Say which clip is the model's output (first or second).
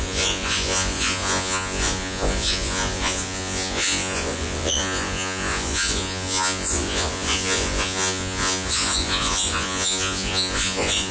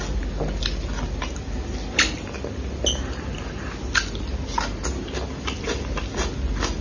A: first